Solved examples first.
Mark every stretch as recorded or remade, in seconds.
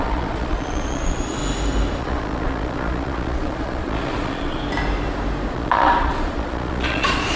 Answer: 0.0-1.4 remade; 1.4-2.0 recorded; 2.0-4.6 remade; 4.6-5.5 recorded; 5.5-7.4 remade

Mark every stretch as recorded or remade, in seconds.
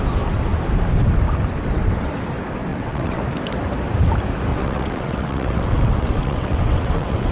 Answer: 0.0-2.7 recorded; 2.7-3.2 remade; 3.2-4.5 recorded; 4.5-7.3 remade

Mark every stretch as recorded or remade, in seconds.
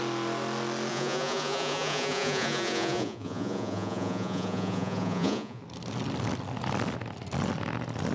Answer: 0.0-0.9 recorded; 0.9-5.6 remade; 5.6-8.1 recorded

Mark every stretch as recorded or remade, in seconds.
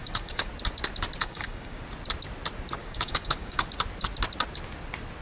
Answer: 0.0-0.5 remade; 0.5-1.2 recorded; 1.2-1.8 remade; 1.8-2.8 recorded; 2.8-3.7 remade; 3.7-5.2 recorded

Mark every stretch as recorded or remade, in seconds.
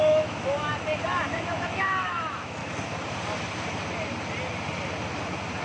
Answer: 0.0-0.7 remade; 0.7-1.3 recorded; 1.3-2.6 remade; 2.6-5.6 recorded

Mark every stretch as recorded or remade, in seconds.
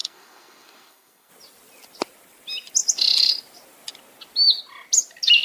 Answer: 0.0-1.3 remade; 1.3-5.4 recorded